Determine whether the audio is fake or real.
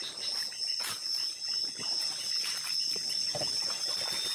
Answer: real